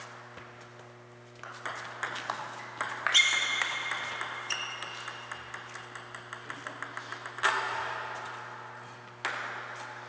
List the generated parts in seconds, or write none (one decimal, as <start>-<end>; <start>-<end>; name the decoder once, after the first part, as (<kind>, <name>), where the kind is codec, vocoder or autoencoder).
none